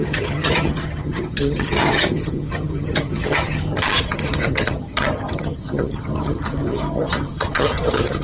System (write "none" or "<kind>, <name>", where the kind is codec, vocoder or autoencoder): vocoder, HiFi-GAN